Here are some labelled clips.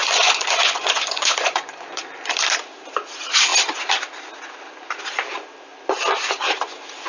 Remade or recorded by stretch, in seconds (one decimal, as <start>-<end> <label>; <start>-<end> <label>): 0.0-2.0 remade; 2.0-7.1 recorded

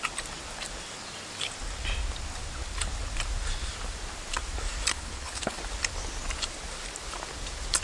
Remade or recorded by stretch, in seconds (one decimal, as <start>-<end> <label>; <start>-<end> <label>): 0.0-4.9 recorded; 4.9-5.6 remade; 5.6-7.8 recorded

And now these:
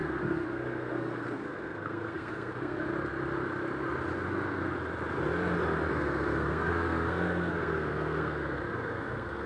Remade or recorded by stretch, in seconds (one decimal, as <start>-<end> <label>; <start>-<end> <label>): 0.0-2.9 remade; 2.9-5.9 recorded; 5.9-9.5 remade